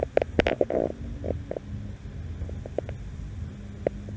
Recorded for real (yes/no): yes